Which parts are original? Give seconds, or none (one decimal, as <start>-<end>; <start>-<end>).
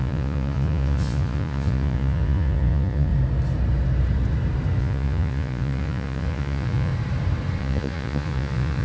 3.1-4.8; 6.9-7.6